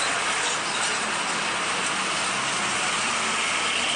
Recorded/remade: recorded